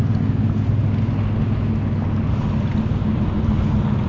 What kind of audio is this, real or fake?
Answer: real